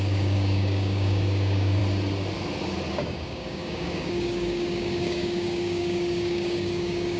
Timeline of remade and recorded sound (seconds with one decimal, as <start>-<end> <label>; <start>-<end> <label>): 0.0-1.8 remade; 1.8-2.9 recorded; 2.9-7.2 remade